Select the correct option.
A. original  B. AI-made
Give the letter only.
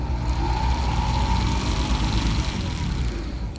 A